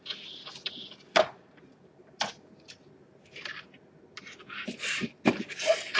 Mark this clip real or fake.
real